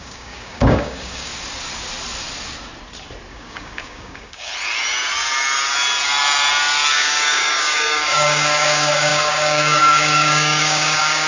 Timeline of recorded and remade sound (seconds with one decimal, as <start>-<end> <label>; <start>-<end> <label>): 0.0-1.3 remade; 1.3-3.3 recorded; 3.3-4.5 remade; 4.5-6.9 recorded; 6.9-11.3 remade